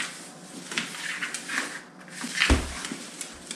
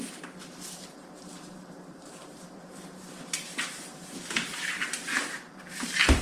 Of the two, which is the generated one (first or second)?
second